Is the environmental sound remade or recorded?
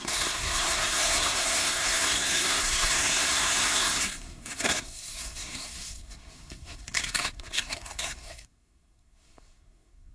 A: remade